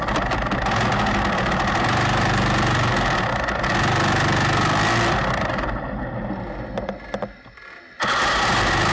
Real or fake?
real